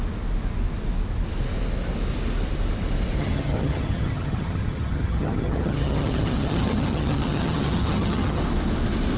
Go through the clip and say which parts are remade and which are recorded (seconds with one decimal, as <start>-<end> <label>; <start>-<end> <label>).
0.0-3.2 recorded; 3.2-8.4 remade; 8.4-9.2 recorded